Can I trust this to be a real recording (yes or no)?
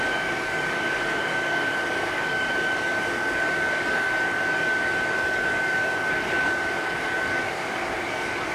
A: no